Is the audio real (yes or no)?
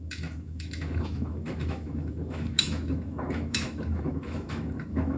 no